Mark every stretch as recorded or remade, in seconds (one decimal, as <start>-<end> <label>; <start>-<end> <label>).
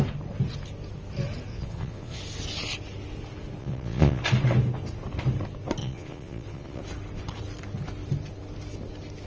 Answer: 0.0-1.5 recorded; 1.5-2.2 remade; 2.2-3.6 recorded; 3.6-4.2 remade; 4.2-5.8 recorded; 5.8-6.8 remade; 6.8-9.3 recorded